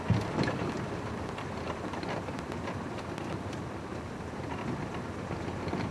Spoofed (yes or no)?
no